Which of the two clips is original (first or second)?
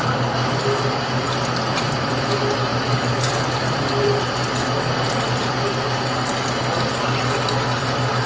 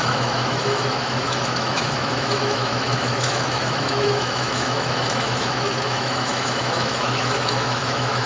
first